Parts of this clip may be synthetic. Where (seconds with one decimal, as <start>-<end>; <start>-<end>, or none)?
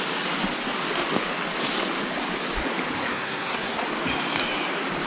3.0-3.8